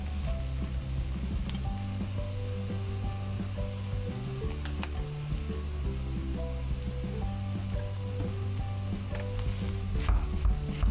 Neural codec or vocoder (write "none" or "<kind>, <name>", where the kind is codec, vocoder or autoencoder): none